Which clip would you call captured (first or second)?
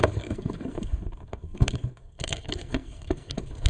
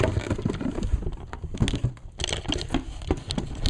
second